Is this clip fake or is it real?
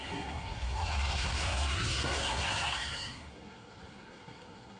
fake